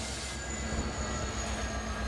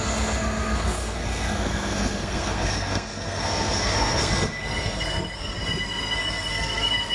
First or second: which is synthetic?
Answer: second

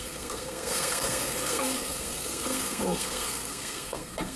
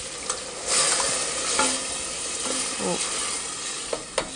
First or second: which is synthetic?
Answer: first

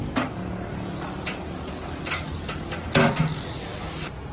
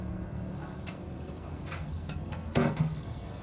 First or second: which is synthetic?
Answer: second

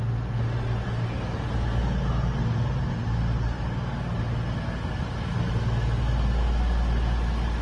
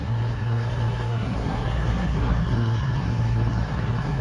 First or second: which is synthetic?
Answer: second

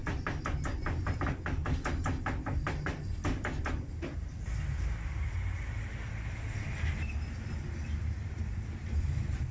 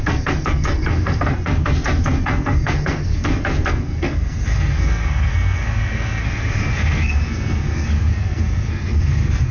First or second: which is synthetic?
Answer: second